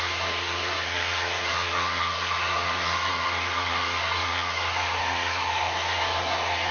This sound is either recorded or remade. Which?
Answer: remade